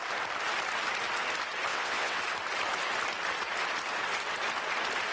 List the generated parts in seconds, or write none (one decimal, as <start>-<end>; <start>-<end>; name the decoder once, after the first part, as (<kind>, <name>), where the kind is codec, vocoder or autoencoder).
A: 1.7-2.2 (vocoder, WaveNeXt)